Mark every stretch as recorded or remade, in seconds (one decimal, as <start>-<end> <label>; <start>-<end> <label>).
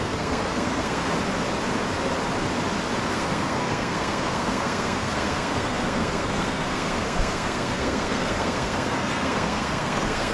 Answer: 0.0-1.0 remade; 1.0-3.1 recorded; 3.1-10.3 remade